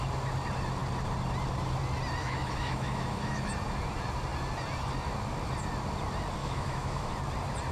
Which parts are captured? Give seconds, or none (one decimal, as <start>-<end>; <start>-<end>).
0.0-2.2; 3.5-6.4; 7.1-7.7